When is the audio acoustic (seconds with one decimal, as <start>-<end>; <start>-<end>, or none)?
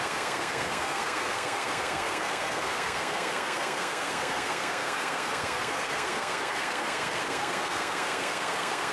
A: none